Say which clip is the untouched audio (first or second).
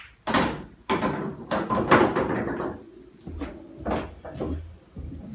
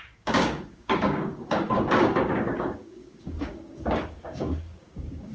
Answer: first